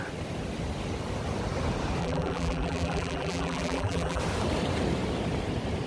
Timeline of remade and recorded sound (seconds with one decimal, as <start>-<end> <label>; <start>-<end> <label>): 0.0-2.0 recorded; 2.0-4.2 remade; 4.2-5.9 recorded